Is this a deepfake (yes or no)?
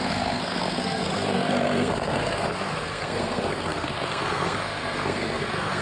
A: yes